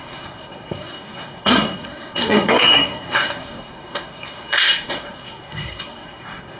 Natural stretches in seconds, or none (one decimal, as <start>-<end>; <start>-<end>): none